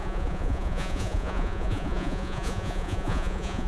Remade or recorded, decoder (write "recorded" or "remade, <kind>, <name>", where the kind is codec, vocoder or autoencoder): remade, vocoder, Vocos